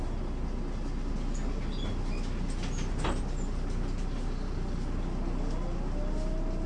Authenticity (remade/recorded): recorded